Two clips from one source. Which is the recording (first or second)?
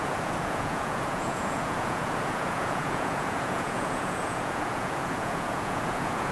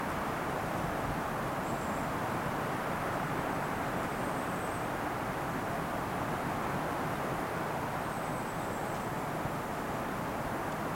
second